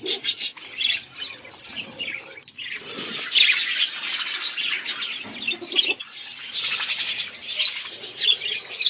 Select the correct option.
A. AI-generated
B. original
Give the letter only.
B